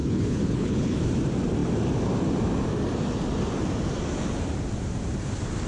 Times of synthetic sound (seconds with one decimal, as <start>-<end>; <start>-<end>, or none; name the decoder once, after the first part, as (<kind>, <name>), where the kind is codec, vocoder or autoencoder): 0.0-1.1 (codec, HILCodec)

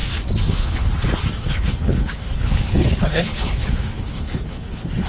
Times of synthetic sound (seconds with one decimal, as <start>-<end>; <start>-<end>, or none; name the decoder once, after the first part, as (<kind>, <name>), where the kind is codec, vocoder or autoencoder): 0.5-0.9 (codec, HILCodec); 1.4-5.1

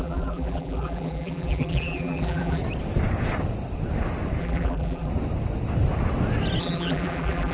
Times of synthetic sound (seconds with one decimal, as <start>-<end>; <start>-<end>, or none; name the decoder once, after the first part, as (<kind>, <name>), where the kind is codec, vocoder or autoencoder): 0.0-2.6 (vocoder, BigVGAN v2); 4.4-5.1; 6.6-7.5

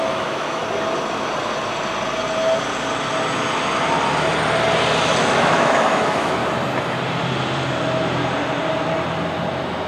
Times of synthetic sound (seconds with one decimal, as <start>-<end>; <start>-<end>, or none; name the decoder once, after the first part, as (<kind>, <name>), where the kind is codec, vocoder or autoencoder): 0.0-0.6 (autoencoder, DAC-VAE); 5.2-6.4; 9.5-9.9

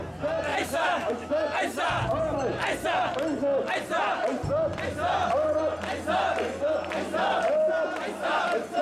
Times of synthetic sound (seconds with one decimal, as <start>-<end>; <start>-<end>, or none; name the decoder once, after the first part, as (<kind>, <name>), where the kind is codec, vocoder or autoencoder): 0.5-1.3 (autoencoder, DAC-VAE)